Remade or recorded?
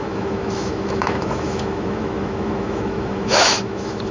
remade